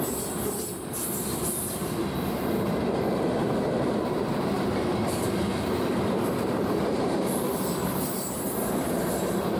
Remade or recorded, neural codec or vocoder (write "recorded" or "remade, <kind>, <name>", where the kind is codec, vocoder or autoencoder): remade, vocoder, BigVGAN v2